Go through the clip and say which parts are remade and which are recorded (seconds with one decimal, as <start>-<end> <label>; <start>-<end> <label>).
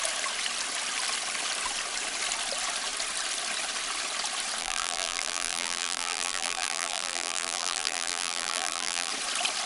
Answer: 0.0-4.6 recorded; 4.6-9.1 remade; 9.1-9.7 recorded